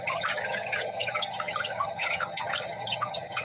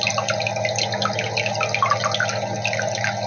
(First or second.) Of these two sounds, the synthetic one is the first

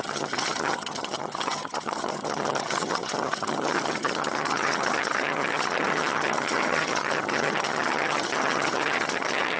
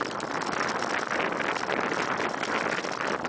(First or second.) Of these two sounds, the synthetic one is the first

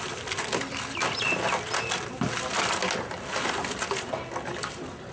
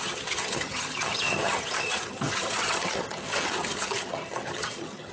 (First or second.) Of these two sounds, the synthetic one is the second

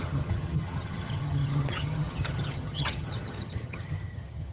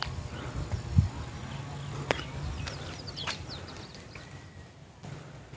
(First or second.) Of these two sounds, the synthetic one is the first